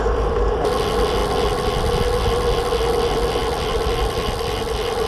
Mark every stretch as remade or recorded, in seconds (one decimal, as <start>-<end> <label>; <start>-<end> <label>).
0.0-5.1 recorded